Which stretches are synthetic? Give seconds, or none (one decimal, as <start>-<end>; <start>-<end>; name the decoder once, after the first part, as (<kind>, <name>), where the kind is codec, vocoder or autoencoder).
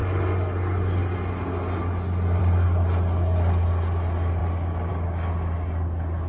none